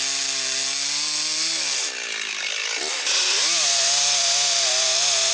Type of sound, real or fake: real